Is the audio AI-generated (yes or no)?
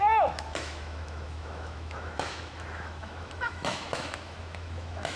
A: yes